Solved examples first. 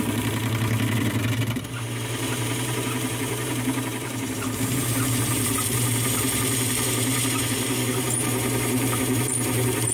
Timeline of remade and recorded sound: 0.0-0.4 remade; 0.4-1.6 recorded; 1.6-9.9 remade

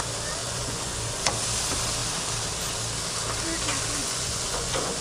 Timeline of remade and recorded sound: 0.0-0.4 recorded; 0.4-1.3 remade; 1.3-4.0 recorded; 4.0-5.0 remade